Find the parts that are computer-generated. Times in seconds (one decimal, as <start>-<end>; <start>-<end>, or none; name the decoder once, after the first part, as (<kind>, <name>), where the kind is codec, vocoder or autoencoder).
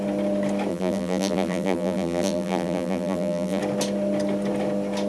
0.7-3.6 (vocoder, BigVGAN v2)